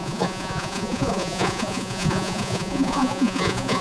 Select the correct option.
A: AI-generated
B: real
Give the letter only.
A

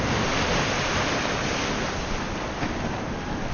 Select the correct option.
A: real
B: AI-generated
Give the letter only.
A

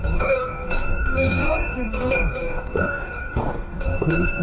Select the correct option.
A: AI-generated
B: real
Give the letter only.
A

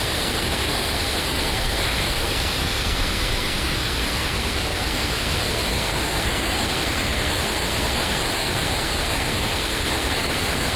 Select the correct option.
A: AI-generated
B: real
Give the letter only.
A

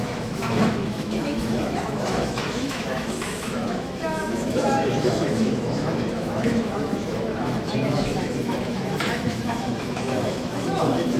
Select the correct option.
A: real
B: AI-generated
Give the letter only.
B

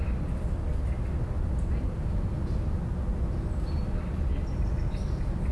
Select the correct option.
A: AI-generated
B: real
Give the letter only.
B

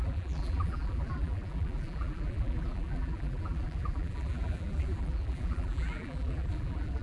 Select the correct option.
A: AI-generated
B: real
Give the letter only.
A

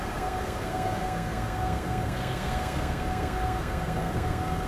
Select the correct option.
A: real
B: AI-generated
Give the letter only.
B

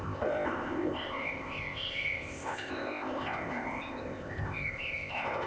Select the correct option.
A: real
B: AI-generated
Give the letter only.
B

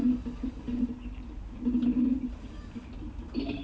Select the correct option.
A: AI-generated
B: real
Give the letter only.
B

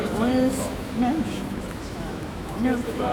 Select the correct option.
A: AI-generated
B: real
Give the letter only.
A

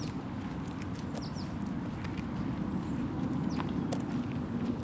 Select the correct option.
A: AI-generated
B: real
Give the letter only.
B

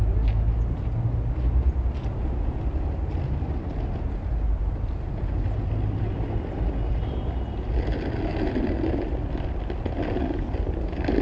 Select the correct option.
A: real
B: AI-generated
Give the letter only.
A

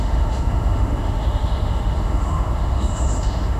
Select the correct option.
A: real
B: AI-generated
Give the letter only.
B